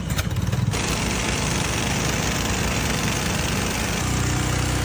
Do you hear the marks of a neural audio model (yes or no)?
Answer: no